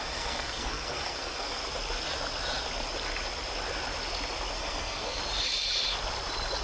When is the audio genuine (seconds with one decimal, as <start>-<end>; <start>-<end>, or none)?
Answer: 1.6-4.5; 5.2-6.6